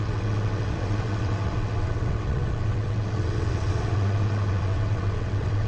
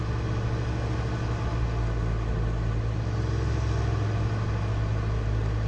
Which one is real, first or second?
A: second